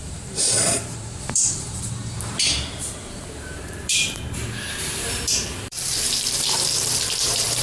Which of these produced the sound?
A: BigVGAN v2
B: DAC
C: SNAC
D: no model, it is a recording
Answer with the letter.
A